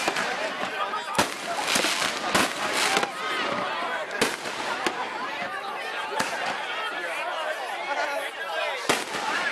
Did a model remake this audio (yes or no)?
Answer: no